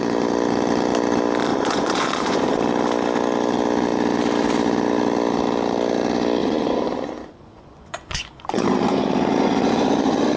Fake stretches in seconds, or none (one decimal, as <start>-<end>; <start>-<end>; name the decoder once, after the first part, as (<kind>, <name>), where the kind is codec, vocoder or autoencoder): 1.5-2.6 (vocoder, Vocos); 6.4-10.4